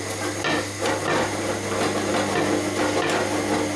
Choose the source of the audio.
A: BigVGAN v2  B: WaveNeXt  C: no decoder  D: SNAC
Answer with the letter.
C